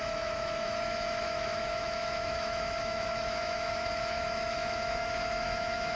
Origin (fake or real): fake